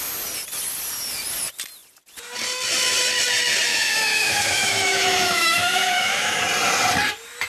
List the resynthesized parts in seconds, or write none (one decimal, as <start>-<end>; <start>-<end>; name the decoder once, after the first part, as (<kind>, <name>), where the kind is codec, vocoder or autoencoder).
3.7-6.4 (autoencoder, DAC-VAE)

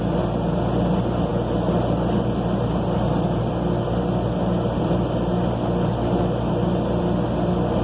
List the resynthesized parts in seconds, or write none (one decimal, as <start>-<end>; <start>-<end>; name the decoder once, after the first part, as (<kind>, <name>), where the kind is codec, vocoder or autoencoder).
none

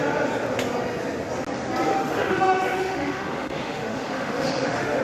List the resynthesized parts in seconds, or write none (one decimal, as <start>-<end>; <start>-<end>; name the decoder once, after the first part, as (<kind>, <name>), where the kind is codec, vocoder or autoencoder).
1.9-5.0 (autoencoder, DAC-VAE)

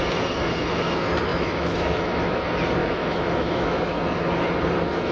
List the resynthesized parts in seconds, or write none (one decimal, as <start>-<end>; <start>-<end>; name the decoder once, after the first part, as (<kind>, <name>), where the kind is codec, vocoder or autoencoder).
1.3-2.4 (autoencoder, DAC-VAE); 2.8-3.9

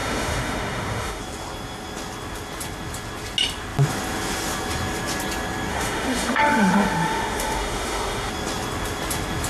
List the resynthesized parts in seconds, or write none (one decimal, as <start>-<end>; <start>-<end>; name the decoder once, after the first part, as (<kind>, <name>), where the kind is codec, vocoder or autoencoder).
0.0-1.2 (autoencoder, DAC-VAE); 5.7-8.3